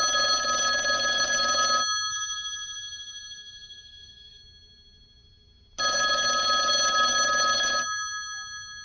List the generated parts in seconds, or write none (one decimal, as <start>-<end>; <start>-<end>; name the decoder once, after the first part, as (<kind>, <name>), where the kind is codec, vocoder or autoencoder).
2.1-4.4 (codec, DAC)

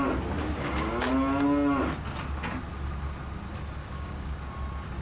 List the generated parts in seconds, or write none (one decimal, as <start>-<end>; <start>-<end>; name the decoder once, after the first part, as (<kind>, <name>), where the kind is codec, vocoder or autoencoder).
0.4-1.1 (codec, DAC); 3.8-4.3